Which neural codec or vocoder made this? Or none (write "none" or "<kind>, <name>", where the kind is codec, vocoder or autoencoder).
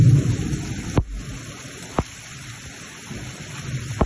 none